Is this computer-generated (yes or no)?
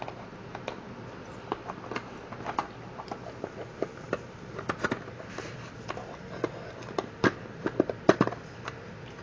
no